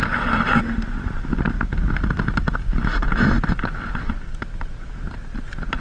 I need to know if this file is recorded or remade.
recorded